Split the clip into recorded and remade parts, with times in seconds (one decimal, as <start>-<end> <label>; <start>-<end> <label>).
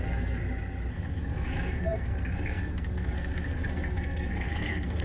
0.0-0.4 remade; 0.4-0.9 recorded; 0.9-5.0 remade